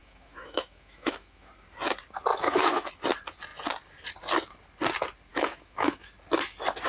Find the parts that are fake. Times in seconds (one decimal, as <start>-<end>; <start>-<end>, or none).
0.0-1.5; 2.3-2.9; 5.3-6.1